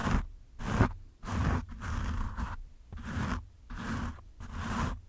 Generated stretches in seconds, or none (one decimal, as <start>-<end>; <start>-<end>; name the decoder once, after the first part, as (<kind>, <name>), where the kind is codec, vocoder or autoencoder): 0.0-0.6 (vocoder, BigVGAN v2); 1.4-3.2